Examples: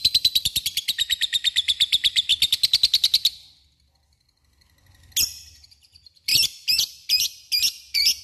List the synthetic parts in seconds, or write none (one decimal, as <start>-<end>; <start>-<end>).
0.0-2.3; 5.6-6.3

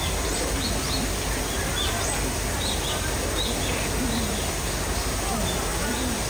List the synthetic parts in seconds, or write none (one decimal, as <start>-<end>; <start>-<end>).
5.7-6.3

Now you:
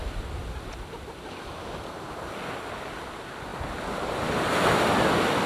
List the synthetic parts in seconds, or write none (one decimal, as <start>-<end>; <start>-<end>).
none

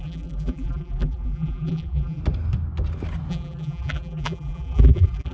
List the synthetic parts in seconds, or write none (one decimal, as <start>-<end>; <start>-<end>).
0.0-2.2; 3.3-5.3

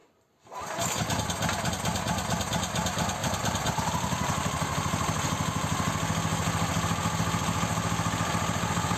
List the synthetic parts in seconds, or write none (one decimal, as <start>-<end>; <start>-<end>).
3.2-3.9